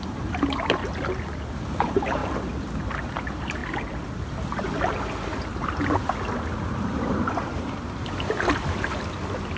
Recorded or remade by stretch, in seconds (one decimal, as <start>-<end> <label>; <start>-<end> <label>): 0.0-0.8 remade; 0.8-1.5 recorded; 1.5-2.2 remade; 2.2-3.1 recorded; 3.1-3.6 remade; 3.6-6.3 recorded; 6.3-9.6 remade